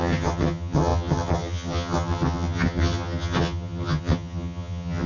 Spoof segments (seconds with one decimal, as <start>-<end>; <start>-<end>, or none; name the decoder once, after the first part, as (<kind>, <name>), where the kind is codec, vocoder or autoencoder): 0.0-5.1 (vocoder, HiFi-GAN)